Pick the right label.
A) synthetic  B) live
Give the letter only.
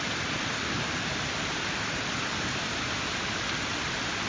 A